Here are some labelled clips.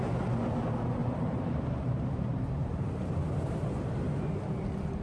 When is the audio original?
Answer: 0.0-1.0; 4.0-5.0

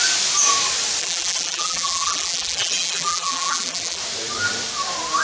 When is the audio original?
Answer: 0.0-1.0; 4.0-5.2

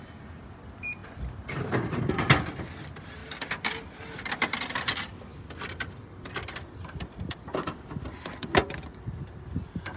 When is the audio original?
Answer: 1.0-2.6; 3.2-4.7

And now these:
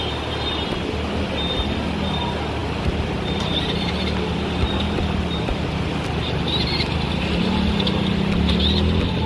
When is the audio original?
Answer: 0.0-9.3